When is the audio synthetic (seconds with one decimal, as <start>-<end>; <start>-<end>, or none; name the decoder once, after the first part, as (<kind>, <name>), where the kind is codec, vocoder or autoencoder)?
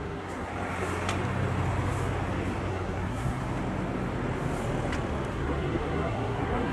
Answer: 0.0-0.5 (codec, SNAC); 2.7-3.4; 5.3-6.7